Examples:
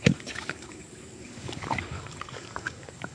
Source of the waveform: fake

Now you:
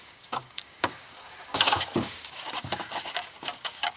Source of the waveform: fake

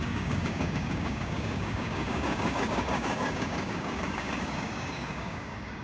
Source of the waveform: fake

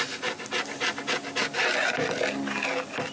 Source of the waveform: real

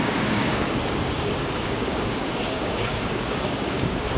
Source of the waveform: fake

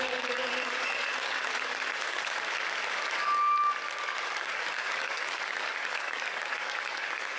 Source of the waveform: fake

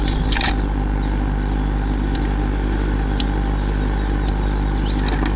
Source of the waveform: real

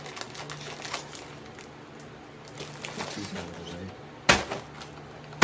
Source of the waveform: real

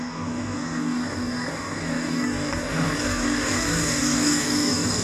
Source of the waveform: fake